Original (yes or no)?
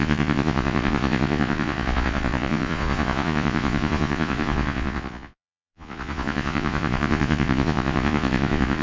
no